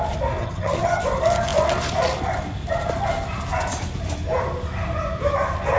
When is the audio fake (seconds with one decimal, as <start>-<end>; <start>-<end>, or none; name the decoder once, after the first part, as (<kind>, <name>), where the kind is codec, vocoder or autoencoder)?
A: 0.4-1.0 (vocoder, HiFi-GAN)